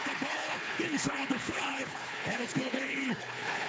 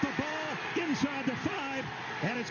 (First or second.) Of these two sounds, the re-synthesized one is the first